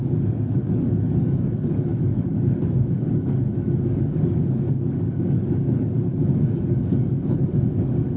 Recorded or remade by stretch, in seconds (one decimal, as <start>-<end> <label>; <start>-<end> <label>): 0.0-8.2 remade